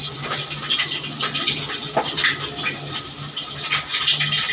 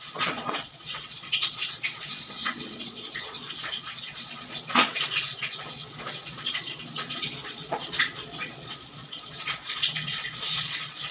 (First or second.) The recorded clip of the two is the first